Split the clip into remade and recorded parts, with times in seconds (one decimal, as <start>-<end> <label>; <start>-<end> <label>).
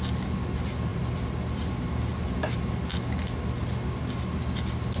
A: 0.0-0.9 recorded; 0.9-1.7 remade; 1.7-5.0 recorded